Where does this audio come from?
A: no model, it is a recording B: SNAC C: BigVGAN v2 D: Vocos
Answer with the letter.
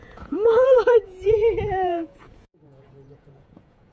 D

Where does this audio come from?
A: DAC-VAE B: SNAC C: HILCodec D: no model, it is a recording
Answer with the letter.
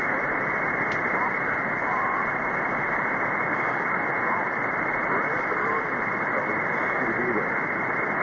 D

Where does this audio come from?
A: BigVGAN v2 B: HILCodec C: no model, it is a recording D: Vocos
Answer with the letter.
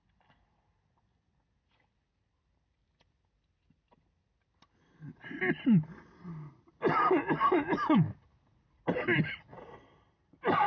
C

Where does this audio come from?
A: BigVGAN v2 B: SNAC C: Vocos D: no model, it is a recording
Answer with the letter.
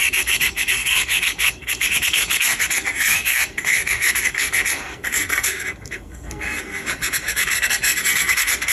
B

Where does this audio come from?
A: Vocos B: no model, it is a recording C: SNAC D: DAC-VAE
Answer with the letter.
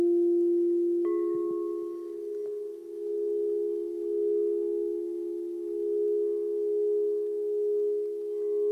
B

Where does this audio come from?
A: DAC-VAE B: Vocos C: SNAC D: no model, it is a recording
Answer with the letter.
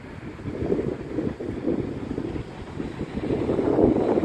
D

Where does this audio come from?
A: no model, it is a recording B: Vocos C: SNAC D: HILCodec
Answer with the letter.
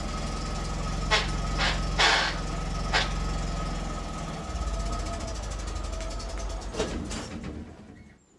A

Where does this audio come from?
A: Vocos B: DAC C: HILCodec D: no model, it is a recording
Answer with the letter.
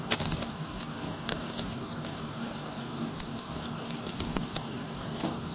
B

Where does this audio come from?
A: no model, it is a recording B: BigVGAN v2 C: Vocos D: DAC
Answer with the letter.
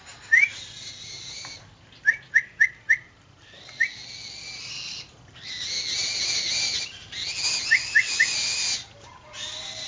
A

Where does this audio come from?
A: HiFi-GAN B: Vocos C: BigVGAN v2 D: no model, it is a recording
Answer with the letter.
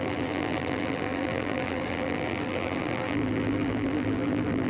C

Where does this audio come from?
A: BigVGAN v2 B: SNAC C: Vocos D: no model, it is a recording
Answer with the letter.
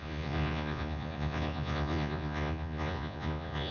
C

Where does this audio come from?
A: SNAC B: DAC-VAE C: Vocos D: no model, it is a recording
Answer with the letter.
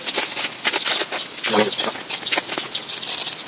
D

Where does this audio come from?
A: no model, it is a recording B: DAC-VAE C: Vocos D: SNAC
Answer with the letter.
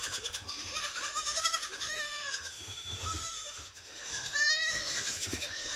B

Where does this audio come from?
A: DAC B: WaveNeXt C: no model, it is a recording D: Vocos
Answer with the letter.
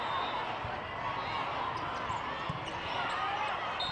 C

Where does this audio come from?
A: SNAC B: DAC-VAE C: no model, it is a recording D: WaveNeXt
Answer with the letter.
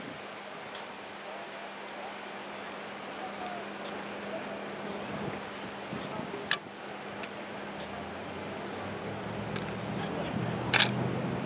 C